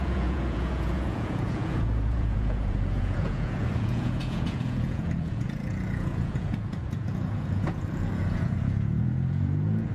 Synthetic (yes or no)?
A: yes